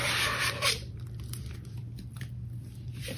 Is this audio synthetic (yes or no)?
yes